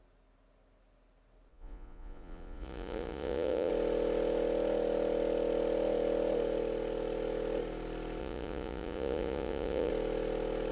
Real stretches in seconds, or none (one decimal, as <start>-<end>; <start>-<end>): 0.0-1.5; 3.7-8.2; 9.9-10.7